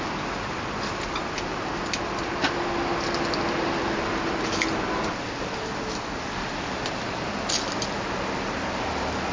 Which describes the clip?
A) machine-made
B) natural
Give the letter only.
B